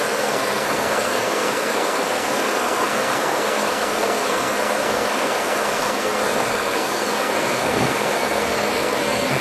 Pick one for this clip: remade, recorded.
remade